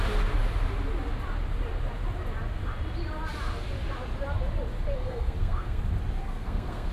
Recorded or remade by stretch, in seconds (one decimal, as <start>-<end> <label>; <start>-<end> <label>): 0.0-5.0 recorded; 5.0-5.8 remade; 5.8-6.2 recorded; 6.2-6.9 remade